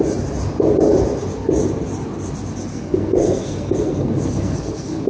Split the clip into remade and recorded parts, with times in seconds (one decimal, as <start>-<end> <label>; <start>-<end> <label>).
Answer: 0.0-2.7 recorded; 2.7-5.1 remade